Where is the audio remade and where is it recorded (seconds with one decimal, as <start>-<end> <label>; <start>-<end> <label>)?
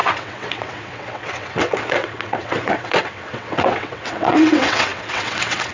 0.0-5.7 remade